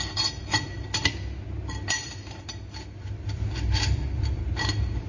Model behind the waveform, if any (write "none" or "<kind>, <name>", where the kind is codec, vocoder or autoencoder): none